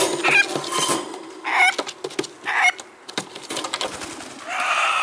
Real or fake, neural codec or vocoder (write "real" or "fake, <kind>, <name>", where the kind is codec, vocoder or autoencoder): real